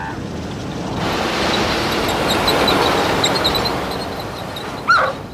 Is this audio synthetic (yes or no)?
no